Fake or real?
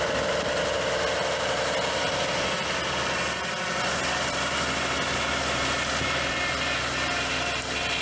real